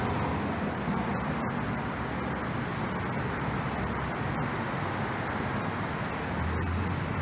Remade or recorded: recorded